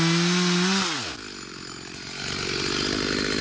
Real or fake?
real